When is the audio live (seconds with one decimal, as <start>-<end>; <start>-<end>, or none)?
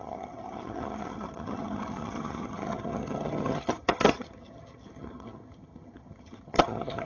none